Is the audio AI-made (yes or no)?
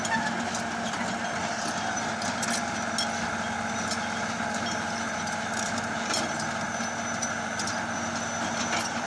no